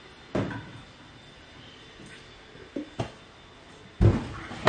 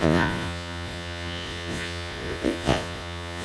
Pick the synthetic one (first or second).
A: second